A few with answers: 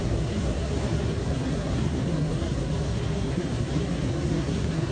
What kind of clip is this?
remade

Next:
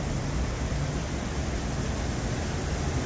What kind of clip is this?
recorded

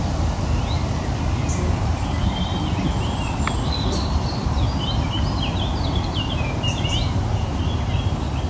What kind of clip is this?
recorded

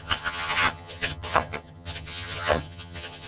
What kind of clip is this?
remade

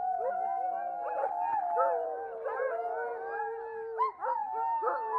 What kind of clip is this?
recorded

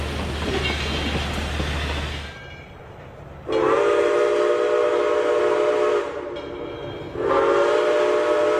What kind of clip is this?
recorded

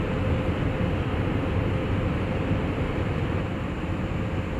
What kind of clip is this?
recorded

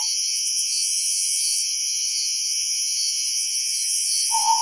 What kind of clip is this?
remade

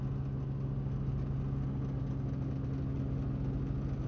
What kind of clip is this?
recorded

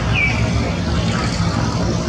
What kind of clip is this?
recorded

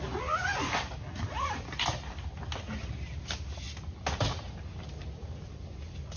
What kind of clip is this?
recorded